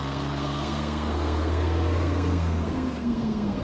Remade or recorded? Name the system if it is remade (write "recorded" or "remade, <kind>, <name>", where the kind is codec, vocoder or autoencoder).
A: remade, codec, SNAC